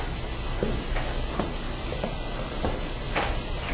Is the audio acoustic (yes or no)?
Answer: yes